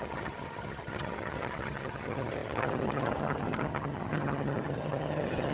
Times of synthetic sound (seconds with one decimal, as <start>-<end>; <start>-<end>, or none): 0.0-5.5

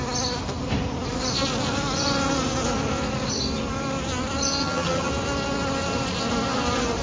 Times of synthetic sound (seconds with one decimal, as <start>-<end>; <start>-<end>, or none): 4.6-5.1

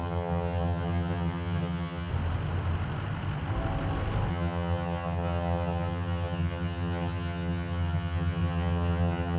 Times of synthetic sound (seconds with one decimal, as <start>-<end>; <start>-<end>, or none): 0.0-2.1; 4.3-9.4

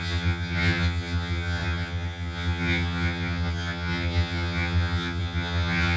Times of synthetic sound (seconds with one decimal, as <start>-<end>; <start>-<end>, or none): 0.0-6.0

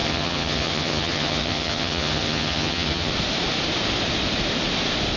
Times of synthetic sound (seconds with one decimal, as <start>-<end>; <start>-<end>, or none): 0.0-3.1

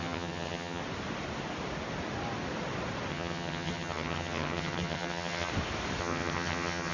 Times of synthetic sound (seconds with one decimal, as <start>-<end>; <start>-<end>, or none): 0.0-0.8; 3.1-5.5; 6.0-6.9